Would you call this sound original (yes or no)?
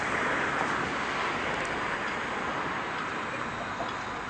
yes